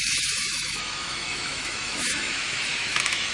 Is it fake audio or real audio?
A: fake